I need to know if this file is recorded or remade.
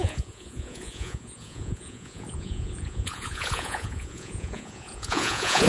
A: remade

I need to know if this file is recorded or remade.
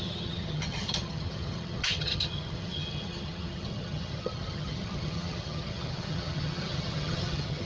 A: remade